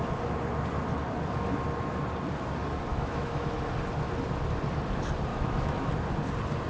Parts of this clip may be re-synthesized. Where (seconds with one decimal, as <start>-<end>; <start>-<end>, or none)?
2.9-3.6; 5.3-5.9